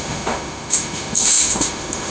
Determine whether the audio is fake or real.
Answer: fake